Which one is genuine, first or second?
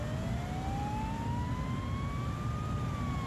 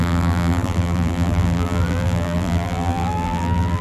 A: first